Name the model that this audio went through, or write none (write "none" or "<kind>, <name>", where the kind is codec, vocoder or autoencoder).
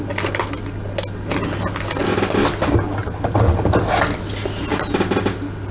none